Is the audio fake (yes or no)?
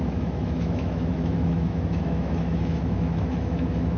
yes